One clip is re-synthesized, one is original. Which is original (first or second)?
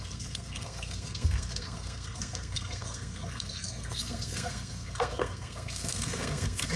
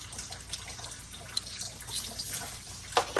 second